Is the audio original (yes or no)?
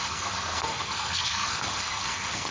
no